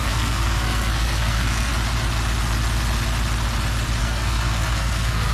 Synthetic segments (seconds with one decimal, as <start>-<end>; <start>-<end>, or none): 0.0-1.7; 4.0-5.3